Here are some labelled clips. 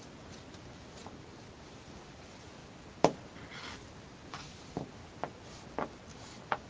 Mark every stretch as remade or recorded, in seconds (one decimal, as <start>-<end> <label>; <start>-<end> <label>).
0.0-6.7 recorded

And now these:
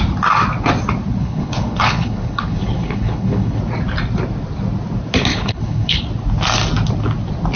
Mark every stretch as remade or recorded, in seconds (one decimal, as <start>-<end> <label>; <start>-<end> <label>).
0.0-1.2 recorded; 1.2-3.6 remade; 3.6-5.3 recorded; 5.3-6.0 remade; 6.0-7.6 recorded

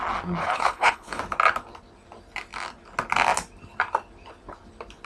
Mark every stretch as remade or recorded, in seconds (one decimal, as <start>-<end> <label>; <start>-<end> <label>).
0.0-0.4 recorded; 0.4-1.2 remade; 1.2-5.1 recorded

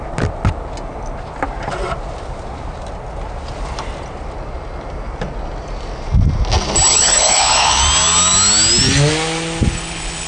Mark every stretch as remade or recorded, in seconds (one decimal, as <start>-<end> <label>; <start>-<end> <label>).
0.0-6.9 recorded; 6.9-7.8 remade; 7.8-9.7 recorded; 9.7-10.3 remade